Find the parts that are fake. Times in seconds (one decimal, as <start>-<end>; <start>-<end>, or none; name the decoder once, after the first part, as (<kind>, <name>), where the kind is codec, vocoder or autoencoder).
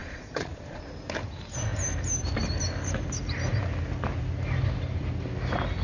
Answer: 0.0-0.8 (vocoder, Vocos)